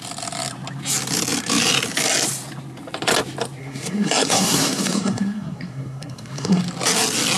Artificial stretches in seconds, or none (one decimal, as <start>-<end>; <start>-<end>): 3.6-6.6